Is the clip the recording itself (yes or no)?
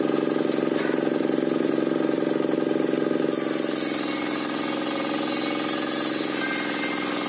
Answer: yes